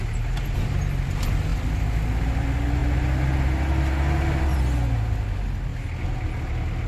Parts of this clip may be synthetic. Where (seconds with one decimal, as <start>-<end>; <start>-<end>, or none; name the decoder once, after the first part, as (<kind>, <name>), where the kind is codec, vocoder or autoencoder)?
none